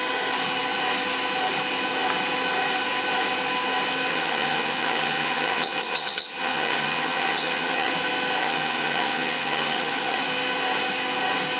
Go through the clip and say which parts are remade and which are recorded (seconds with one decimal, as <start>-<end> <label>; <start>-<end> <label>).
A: 0.0-4.1 recorded; 4.1-7.9 remade; 7.9-8.4 recorded; 8.4-10.2 remade; 10.2-11.6 recorded